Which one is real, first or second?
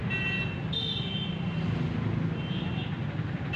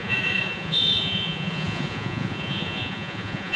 first